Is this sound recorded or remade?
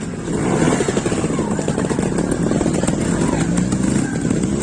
recorded